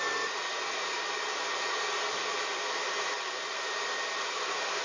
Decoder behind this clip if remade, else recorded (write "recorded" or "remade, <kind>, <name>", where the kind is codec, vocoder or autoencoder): recorded